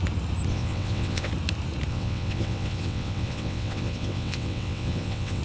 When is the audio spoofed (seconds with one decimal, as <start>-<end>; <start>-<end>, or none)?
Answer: 0.5-1.3; 1.9-5.4